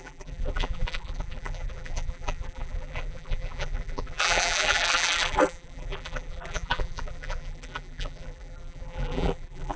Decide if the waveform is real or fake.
fake